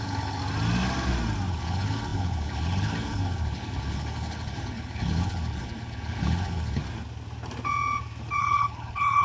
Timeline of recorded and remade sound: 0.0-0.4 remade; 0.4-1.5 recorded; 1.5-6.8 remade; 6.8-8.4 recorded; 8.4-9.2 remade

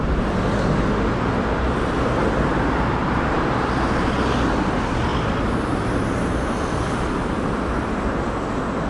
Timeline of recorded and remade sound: 0.0-5.1 recorded; 5.1-7.7 remade; 7.7-8.9 recorded

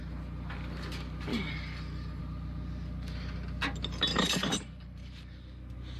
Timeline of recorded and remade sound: 0.0-1.3 recorded; 1.3-2.2 remade; 2.2-4.1 recorded; 4.1-5.1 remade; 5.1-6.0 recorded

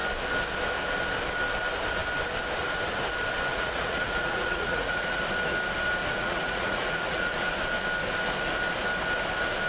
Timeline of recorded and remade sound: 0.0-3.5 recorded; 3.5-5.2 remade; 5.2-6.0 recorded; 6.0-7.5 remade; 7.5-9.7 recorded

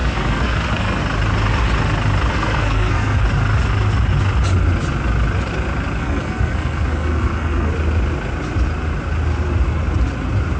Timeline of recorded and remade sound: 0.0-1.0 remade; 1.0-2.3 recorded; 2.3-3.2 remade; 3.2-6.0 recorded; 6.0-7.7 remade; 7.7-10.6 recorded

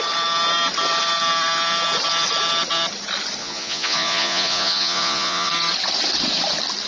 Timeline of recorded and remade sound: 0.0-3.4 recorded; 3.4-5.5 remade; 5.5-6.9 recorded